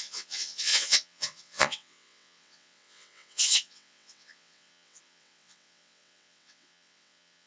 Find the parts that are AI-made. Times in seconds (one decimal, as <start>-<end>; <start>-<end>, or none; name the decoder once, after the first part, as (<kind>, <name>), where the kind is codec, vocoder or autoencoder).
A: 0.0-7.5 (vocoder, WaveNeXt)